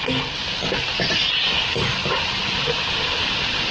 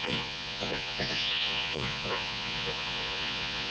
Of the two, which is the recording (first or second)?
first